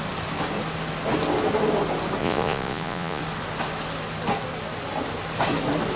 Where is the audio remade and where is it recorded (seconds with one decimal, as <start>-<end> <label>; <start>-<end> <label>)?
0.0-2.2 recorded; 2.2-3.2 remade; 3.2-6.0 recorded